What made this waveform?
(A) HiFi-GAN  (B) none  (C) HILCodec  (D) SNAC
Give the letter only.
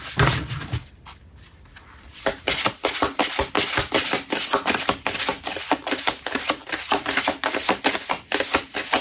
B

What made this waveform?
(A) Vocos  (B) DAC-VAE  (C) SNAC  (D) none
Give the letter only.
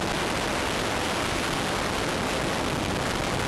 D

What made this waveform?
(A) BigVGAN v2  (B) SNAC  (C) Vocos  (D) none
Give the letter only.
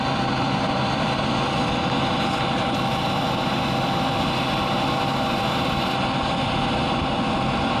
D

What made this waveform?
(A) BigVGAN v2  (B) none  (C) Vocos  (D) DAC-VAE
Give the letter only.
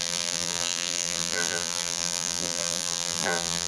A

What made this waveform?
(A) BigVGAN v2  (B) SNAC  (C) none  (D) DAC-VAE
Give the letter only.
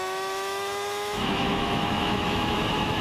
D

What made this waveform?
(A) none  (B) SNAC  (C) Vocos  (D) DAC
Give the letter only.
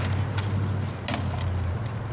A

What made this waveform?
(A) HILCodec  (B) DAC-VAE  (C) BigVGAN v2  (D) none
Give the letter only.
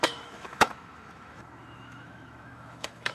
B